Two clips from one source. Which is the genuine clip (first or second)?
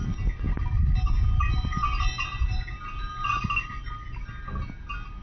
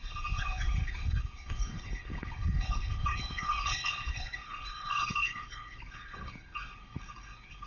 first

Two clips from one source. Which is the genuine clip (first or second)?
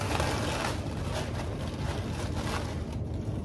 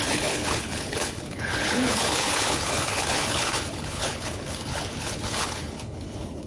first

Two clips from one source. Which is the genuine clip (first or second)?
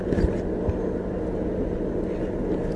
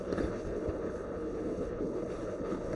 first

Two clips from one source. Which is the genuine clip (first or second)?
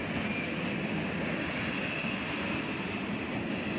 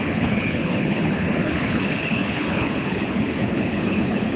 first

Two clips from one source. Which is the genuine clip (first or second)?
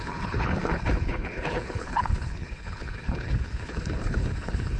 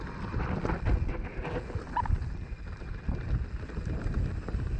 second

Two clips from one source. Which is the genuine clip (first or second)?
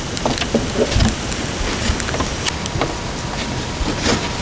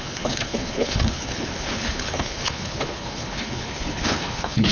first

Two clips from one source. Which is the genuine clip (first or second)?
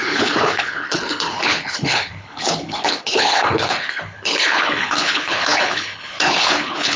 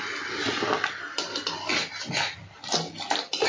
second